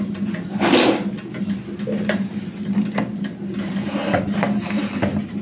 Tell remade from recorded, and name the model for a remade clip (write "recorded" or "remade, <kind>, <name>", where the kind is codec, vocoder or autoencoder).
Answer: recorded